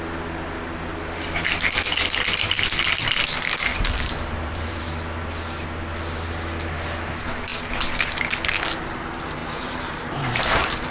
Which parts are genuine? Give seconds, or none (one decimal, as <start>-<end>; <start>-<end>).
0.0-3.7; 4.8-9.4